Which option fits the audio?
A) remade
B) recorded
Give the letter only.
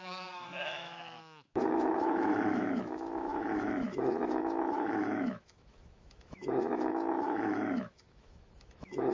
A